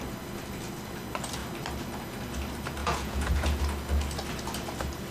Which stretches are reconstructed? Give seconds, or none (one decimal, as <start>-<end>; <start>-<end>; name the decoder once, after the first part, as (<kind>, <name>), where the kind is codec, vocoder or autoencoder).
2.8-3.6 (vocoder, Vocos)